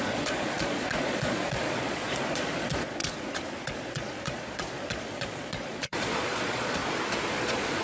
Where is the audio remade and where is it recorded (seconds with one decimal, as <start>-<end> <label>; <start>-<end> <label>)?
0.0-3.0 remade; 3.0-3.8 recorded; 3.8-6.8 remade; 6.8-7.3 recorded; 7.3-7.8 remade